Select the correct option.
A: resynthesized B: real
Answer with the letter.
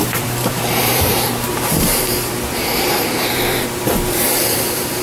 A